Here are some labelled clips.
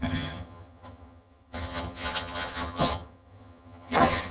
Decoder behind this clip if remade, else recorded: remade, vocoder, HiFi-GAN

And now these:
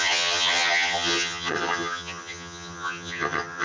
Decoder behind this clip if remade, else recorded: remade, vocoder, HiFi-GAN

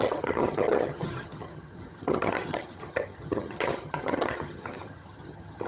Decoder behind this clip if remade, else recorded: remade, vocoder, HiFi-GAN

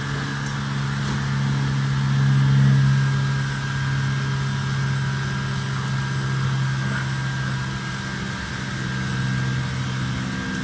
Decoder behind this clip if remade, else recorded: recorded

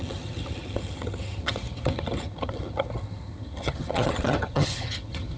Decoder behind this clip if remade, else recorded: remade, vocoder, HiFi-GAN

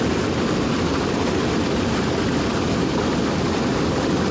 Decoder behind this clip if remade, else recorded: recorded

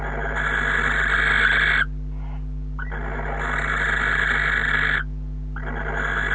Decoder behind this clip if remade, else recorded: recorded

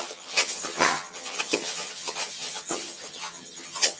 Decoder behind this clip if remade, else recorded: remade, vocoder, HiFi-GAN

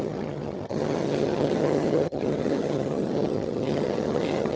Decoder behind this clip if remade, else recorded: remade, vocoder, HiFi-GAN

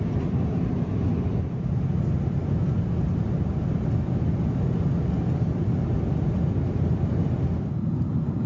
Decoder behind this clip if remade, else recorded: recorded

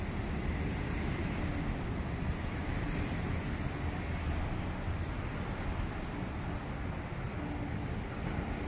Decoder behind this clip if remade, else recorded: recorded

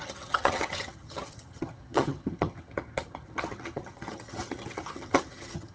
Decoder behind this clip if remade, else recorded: remade, vocoder, HiFi-GAN